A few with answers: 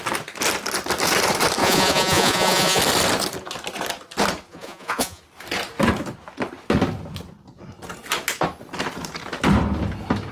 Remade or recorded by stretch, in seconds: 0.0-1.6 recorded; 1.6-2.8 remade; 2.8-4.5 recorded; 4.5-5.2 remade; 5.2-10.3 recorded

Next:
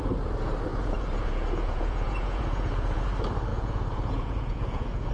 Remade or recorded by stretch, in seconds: 0.0-0.7 recorded; 0.7-3.0 remade; 3.0-3.5 recorded; 3.5-5.1 remade

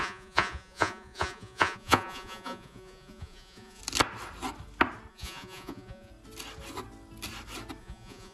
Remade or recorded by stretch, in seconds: 0.0-3.8 remade; 3.8-5.1 recorded; 5.1-6.1 remade; 6.1-7.8 recorded; 7.8-8.3 remade

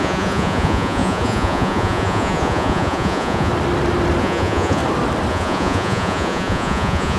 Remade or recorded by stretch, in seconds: 0.0-3.5 remade; 3.5-4.2 recorded; 4.2-4.8 remade; 4.8-5.3 recorded; 5.3-7.2 remade

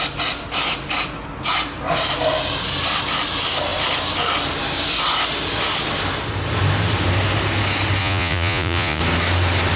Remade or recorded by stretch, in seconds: 0.0-8.0 recorded; 8.0-9.0 remade; 9.0-9.8 recorded

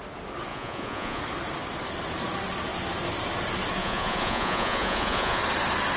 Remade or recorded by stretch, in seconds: 0.0-0.5 recorded; 0.5-1.2 remade; 1.2-3.8 recorded; 3.8-5.4 remade; 5.4-6.0 recorded